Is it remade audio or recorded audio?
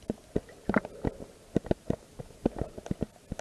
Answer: recorded